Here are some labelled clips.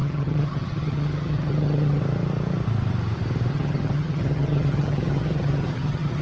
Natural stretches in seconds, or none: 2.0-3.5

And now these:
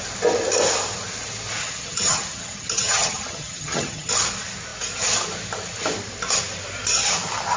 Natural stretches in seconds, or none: 0.0-1.6; 4.1-7.6

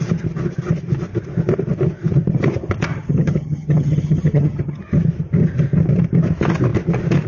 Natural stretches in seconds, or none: 0.0-2.9; 4.8-7.3

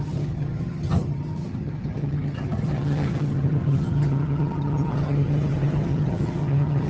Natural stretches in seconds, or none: none

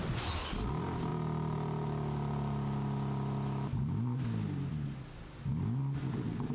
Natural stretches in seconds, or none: 0.0-6.5